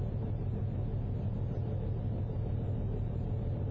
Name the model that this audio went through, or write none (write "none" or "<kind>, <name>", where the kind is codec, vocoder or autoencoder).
none